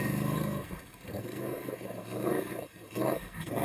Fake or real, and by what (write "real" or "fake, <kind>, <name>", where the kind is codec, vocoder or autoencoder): fake, codec, SNAC